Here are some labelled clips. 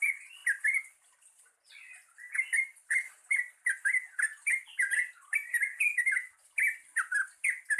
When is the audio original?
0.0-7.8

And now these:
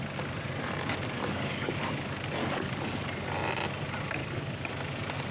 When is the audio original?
0.0-1.2; 1.7-2.4; 3.0-4.2; 4.7-5.3

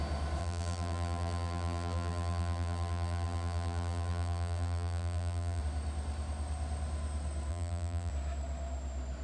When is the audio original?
0.0-0.4; 5.6-7.5; 8.1-9.2

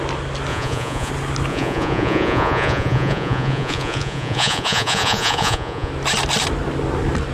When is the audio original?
0.0-0.5; 1.1-1.5; 5.9-7.3